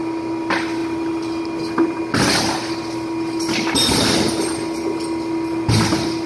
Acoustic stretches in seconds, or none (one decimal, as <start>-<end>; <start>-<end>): 0.0-6.3